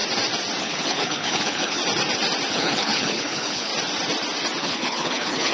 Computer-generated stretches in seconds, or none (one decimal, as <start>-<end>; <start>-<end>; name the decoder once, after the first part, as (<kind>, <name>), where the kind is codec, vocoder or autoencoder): 0.6-1.8 (codec, HILCodec); 2.5-3.7; 4.6-5.5